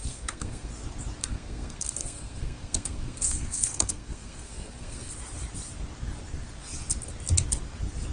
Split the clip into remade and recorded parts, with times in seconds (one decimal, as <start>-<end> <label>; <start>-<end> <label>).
0.0-0.7 remade; 0.7-1.2 recorded; 1.2-5.1 remade; 5.1-8.1 recorded